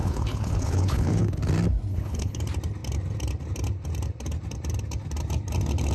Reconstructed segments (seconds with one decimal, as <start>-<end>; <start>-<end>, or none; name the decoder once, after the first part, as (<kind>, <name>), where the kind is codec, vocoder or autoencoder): 0.0-1.4 (codec, HILCodec); 1.9-2.4